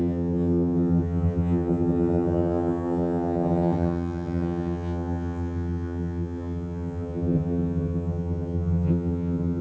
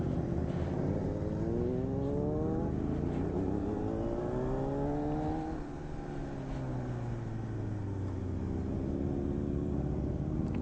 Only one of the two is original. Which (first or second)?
second